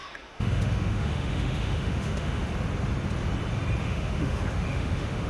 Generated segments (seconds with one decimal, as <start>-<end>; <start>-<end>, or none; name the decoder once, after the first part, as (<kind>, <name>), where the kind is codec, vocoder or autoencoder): 0.0-2.5 (autoencoder, DAC-VAE); 3.8-5.3